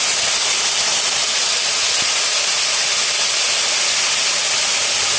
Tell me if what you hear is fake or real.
real